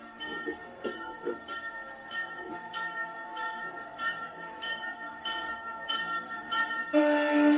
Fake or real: fake